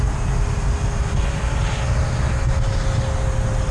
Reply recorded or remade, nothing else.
recorded